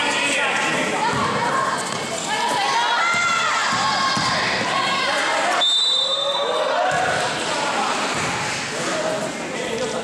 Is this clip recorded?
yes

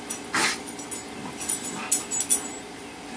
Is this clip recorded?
yes